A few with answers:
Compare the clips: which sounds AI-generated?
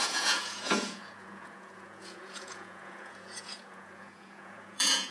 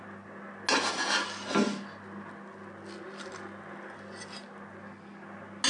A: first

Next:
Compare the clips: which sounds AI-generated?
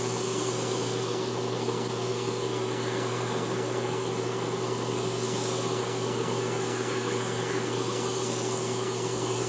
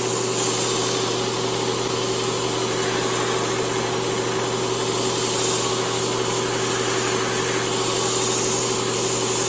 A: first